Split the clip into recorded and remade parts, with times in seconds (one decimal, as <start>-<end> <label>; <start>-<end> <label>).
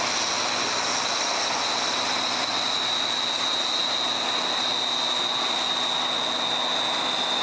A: 0.0-7.4 recorded